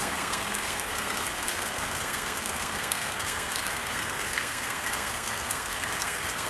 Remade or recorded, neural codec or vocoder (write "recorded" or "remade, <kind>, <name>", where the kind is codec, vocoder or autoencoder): remade, codec, SNAC